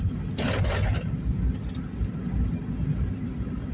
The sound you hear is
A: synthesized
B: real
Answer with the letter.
B